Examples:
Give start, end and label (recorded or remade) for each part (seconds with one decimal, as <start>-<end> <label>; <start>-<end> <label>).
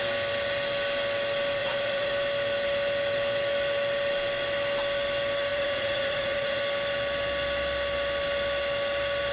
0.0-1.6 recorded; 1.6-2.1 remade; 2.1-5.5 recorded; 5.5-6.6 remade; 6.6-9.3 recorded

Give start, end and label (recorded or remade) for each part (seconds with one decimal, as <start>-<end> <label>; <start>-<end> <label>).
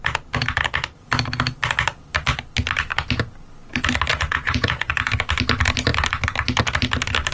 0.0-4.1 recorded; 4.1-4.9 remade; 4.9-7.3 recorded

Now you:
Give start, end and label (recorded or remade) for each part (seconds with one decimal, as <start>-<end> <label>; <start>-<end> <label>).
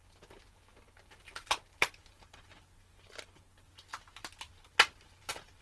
0.0-5.6 recorded